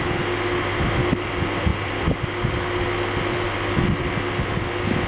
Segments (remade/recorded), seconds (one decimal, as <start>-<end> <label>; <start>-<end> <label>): 0.0-5.1 recorded